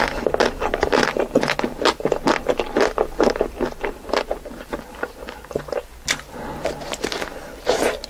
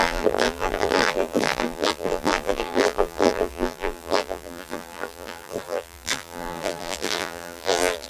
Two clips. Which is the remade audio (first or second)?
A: second